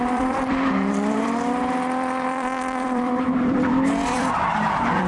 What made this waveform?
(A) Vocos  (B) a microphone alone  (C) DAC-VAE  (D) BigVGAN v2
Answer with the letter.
D